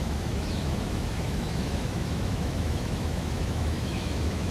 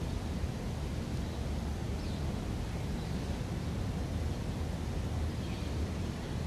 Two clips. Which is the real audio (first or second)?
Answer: second